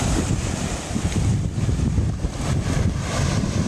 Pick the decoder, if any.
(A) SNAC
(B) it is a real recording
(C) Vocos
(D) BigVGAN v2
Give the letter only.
D